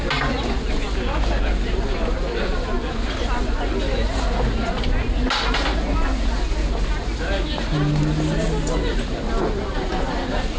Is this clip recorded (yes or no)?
yes